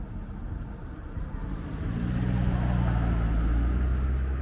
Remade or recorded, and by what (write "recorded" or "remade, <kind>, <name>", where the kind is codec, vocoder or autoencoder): recorded